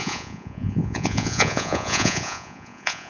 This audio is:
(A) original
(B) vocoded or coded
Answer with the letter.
B